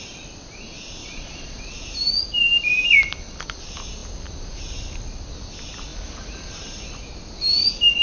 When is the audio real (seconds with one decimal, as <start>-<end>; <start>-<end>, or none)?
0.0-1.0; 1.6-8.0